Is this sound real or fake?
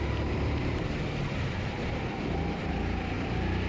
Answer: fake